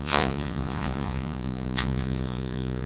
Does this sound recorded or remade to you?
remade